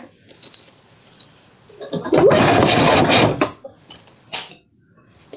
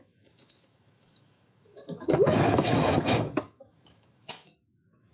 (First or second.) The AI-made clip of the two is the second